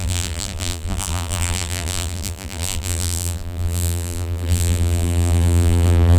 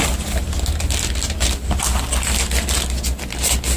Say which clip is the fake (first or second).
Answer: first